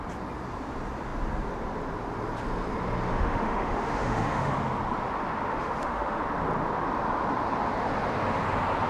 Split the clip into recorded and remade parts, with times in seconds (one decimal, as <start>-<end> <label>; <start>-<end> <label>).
0.0-3.1 recorded; 3.1-4.5 remade; 4.5-5.5 recorded; 5.5-6.2 remade; 6.2-8.9 recorded